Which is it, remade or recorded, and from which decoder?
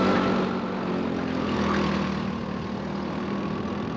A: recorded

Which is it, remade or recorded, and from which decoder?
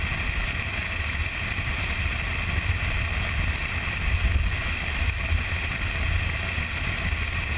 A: recorded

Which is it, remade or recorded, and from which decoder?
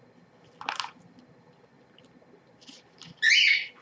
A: recorded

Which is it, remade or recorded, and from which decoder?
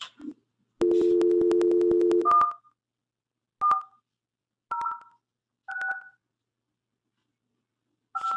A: recorded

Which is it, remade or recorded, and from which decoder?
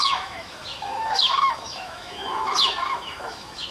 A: remade, autoencoder, DAC-VAE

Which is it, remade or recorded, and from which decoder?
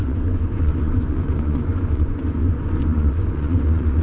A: remade, vocoder, Vocos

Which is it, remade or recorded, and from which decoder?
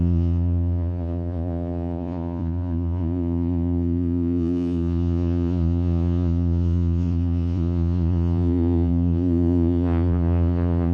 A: remade, vocoder, Vocos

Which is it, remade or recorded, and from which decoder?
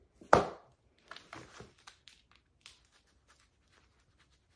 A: recorded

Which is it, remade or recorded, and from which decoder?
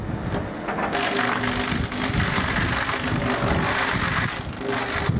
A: recorded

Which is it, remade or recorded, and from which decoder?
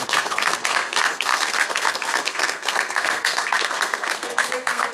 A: remade, codec, SNAC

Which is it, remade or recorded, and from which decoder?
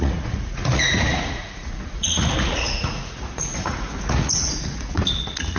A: remade, vocoder, Vocos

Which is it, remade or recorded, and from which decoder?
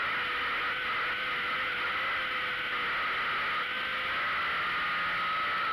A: recorded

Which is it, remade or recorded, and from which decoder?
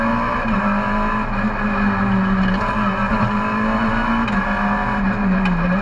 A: recorded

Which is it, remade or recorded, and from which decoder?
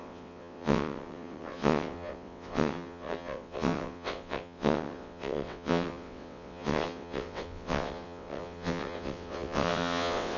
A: remade, vocoder, WaveNeXt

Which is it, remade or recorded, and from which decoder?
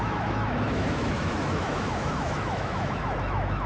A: remade, autoencoder, DAC-VAE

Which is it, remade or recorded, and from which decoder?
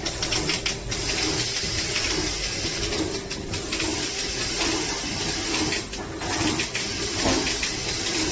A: recorded